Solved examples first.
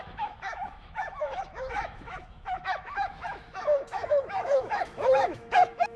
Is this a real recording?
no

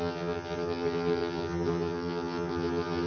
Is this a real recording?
no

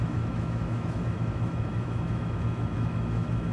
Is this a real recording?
no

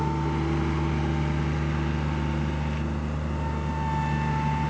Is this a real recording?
yes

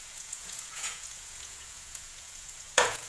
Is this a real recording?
no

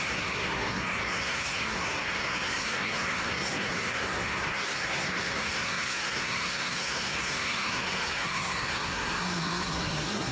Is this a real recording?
no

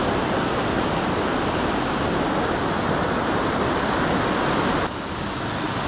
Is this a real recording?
yes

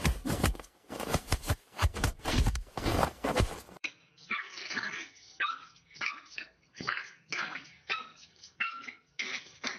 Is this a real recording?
no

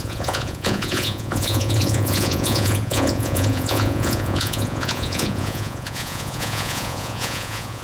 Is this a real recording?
no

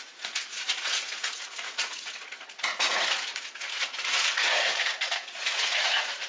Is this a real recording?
no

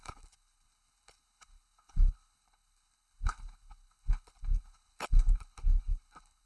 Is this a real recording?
no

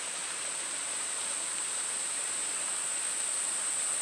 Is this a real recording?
no